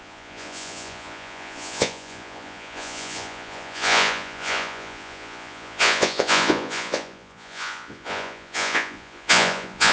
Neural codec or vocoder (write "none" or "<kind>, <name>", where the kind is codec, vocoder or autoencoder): vocoder, Vocos